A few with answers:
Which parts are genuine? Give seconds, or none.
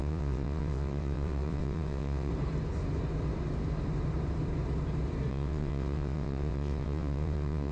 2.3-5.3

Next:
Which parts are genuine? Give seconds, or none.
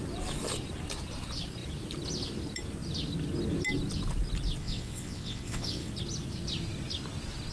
0.0-4.6; 5.9-7.5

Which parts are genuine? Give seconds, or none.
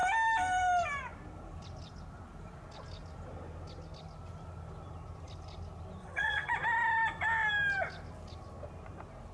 0.0-6.0; 6.5-9.3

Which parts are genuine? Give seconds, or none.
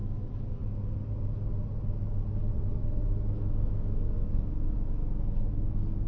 0.0-2.5; 3.1-6.1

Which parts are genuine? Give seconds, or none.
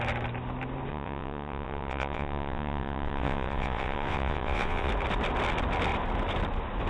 0.0-0.9; 4.9-6.9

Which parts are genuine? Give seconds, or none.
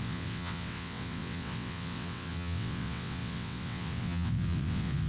none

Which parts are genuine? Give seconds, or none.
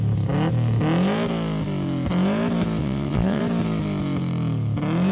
0.0-2.8; 3.4-5.1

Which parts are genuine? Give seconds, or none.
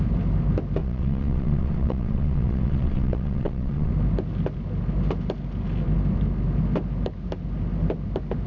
0.0-0.8; 3.9-8.5